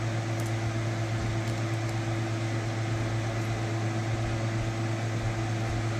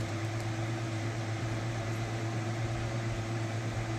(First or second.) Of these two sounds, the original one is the first